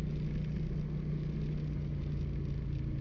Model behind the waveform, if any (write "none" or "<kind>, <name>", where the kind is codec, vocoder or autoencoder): none